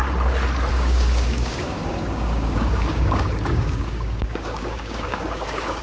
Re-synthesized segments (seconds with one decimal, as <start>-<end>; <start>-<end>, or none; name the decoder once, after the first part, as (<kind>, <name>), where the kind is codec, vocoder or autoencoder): 0.7-5.8 (codec, DAC)